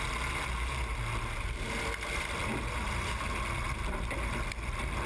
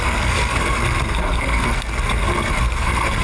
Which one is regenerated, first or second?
second